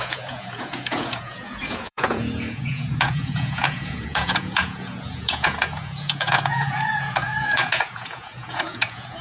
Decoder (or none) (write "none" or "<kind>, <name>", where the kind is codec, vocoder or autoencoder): vocoder, Vocos